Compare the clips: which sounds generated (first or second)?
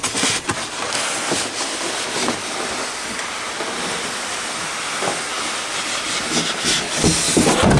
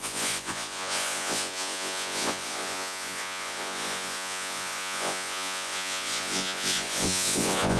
second